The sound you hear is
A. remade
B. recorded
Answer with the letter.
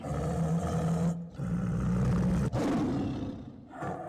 B